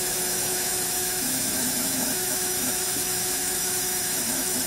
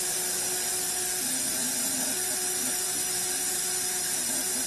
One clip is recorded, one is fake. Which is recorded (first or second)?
second